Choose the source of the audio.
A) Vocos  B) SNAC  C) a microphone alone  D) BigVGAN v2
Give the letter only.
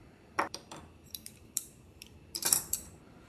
D